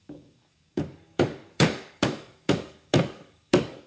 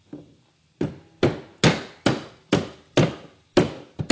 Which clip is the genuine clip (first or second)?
second